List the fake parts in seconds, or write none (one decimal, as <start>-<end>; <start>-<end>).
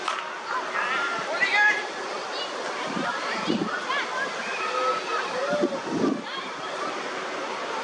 1.4-2.1; 5.1-7.0